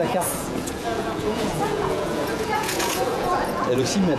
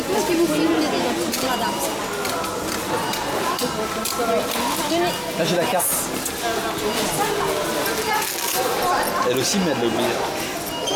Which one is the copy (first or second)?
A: first